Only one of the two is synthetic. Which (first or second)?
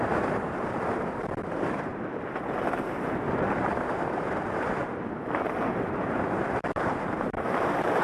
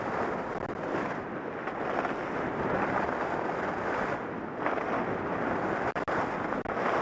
first